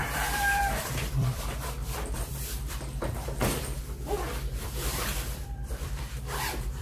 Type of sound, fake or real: fake